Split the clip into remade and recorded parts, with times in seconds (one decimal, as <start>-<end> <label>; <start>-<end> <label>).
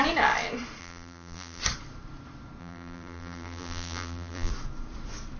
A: 0.0-0.8 recorded; 0.8-1.6 remade; 1.6-2.6 recorded; 2.6-4.5 remade; 4.5-5.4 recorded